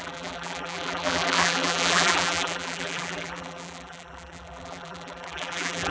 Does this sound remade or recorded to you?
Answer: remade